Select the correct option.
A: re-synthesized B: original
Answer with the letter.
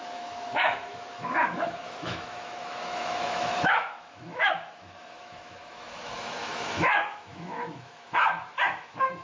A